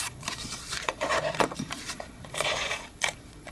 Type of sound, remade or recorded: remade